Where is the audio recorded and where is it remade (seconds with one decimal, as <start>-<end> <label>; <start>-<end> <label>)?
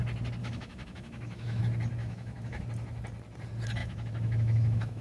0.0-0.4 recorded; 0.4-1.6 remade; 1.6-2.0 recorded; 2.0-2.6 remade; 2.6-3.8 recorded; 3.8-5.0 remade